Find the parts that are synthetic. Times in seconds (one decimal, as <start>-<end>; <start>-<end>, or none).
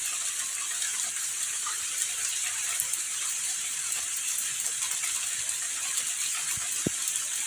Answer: 0.7-4.5